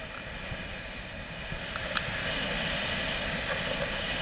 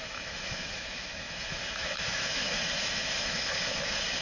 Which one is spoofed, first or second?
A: second